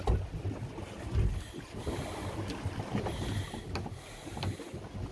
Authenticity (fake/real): real